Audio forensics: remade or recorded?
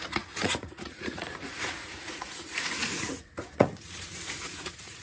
remade